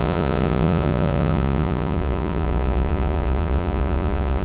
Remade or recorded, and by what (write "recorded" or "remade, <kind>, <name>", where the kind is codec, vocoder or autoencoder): remade, vocoder, Vocos